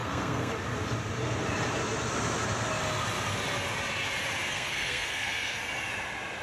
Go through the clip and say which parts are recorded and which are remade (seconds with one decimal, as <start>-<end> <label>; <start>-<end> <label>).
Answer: 0.0-0.5 remade; 0.5-4.5 recorded; 4.5-5.6 remade; 5.6-6.4 recorded